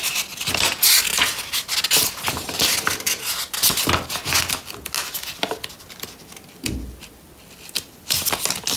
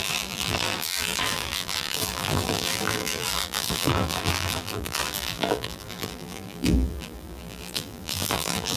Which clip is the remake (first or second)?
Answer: second